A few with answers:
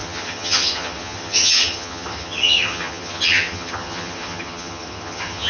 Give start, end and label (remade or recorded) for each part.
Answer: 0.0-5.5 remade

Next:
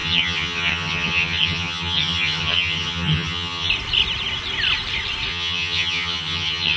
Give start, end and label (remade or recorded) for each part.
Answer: 0.0-3.7 remade; 3.7-5.3 recorded; 5.3-6.8 remade